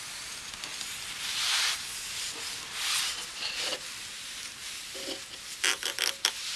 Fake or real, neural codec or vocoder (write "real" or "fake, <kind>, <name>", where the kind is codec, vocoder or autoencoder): real